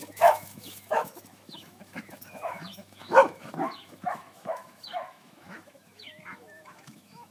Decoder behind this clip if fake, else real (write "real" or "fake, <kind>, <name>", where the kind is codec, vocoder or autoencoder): fake, autoencoder, DAC-VAE